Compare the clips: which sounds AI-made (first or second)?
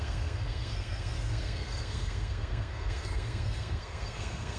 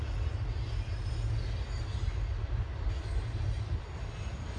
first